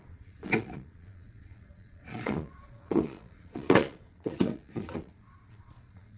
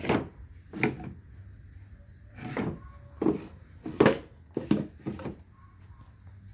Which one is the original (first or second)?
second